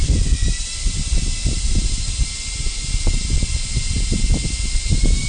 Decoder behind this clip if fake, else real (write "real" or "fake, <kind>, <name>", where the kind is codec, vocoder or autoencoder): real